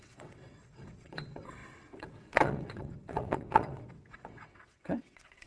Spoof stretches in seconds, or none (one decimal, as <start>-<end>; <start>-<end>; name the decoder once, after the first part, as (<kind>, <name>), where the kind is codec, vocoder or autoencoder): 0.0-5.5 (vocoder, WaveNeXt)

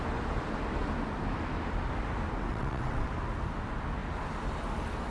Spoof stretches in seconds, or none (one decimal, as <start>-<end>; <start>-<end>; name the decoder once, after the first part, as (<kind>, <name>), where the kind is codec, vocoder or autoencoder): 2.5-3.1 (vocoder, WaveNeXt)